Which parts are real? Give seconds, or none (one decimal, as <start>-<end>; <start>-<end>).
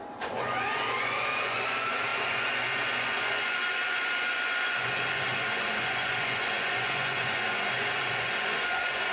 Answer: none